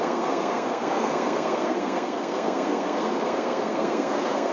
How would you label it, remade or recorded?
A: remade